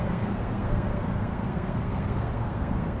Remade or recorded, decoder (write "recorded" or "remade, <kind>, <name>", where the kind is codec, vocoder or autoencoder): remade, codec, SNAC